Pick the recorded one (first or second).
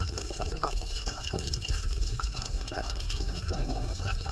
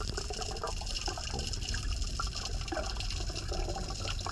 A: second